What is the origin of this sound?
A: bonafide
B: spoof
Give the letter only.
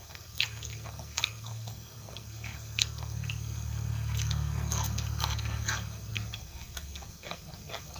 B